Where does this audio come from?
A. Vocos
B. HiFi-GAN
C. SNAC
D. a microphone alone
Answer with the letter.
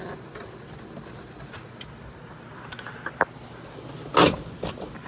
D